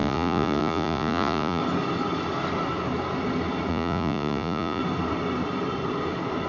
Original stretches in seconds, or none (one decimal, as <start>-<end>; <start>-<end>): 1.6-3.7; 4.8-6.5